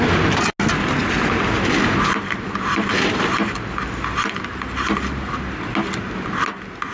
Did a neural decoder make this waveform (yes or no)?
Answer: no